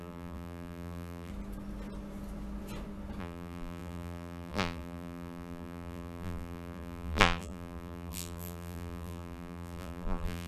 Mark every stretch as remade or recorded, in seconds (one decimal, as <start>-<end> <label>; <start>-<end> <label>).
0.0-1.3 remade; 1.3-3.2 recorded; 3.2-10.5 remade